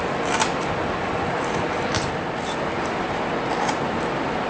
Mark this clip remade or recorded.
recorded